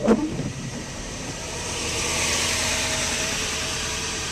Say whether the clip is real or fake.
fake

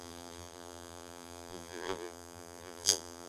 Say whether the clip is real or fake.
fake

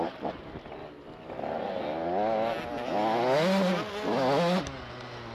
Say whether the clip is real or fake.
real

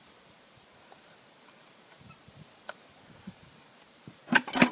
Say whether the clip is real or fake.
fake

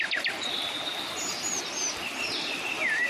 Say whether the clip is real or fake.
real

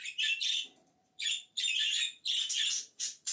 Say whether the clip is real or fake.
fake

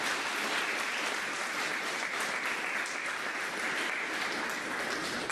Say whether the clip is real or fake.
real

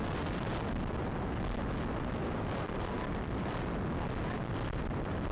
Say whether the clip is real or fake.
real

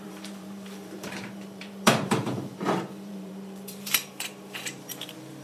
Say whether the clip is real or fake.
fake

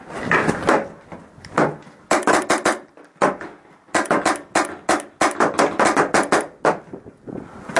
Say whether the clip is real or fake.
real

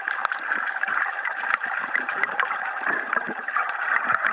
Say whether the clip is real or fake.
fake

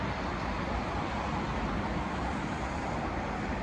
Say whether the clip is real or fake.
real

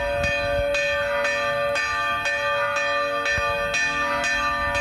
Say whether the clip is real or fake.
real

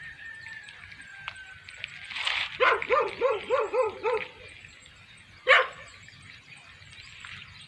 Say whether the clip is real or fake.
real